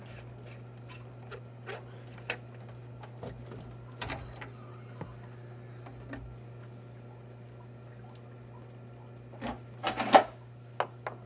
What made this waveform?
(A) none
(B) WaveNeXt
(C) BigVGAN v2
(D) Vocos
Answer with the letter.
A